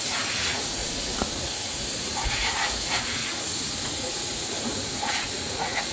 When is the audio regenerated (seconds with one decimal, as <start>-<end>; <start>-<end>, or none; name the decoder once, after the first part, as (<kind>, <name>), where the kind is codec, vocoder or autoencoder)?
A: 0.0-5.9 (vocoder, Vocos)